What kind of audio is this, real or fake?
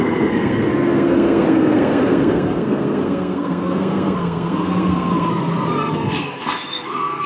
fake